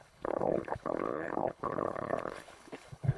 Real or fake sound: fake